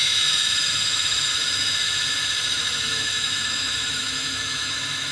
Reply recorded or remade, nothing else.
remade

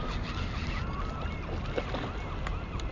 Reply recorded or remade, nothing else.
recorded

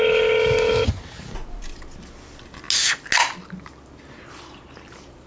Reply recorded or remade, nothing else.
recorded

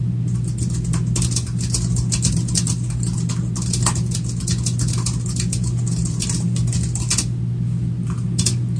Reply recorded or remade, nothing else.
recorded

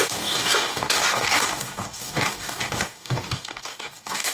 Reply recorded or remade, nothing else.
remade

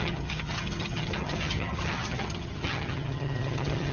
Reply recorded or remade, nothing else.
remade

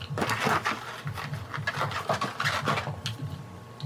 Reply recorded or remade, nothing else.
recorded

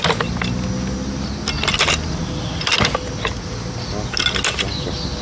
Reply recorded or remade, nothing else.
recorded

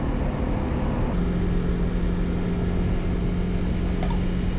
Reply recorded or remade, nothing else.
recorded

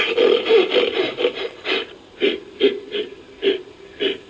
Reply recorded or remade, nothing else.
recorded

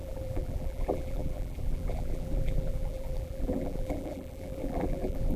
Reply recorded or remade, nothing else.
remade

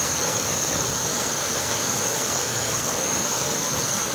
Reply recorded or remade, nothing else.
remade